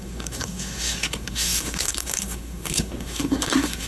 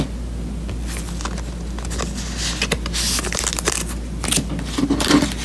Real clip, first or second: second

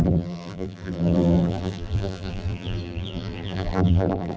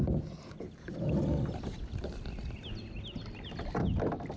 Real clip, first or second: second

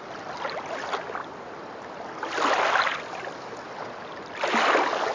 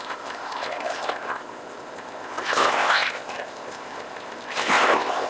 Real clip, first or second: first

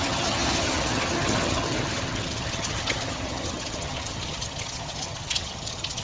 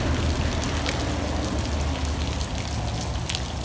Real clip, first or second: second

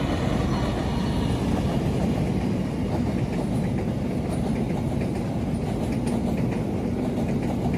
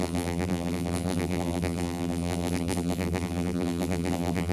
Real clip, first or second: first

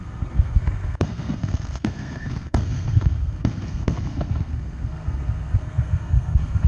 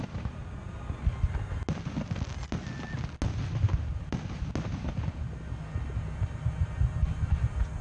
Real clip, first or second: second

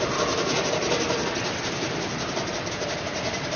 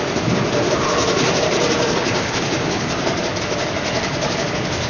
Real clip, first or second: first